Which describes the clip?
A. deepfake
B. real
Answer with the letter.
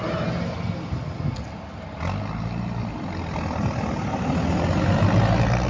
B